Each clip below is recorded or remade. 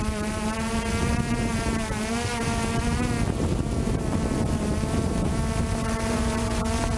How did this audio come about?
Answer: recorded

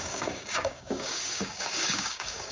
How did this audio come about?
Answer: remade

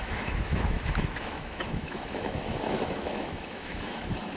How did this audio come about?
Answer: remade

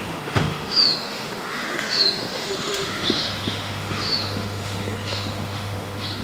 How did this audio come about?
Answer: remade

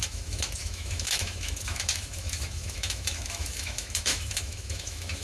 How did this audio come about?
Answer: remade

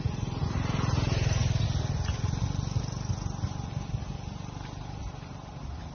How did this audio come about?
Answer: recorded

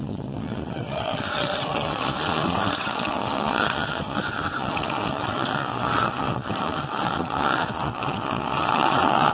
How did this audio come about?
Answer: remade